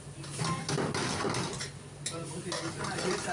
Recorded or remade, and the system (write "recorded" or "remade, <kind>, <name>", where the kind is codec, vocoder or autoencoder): recorded